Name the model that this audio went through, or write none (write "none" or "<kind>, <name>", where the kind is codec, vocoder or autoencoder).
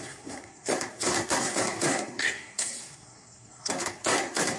codec, SNAC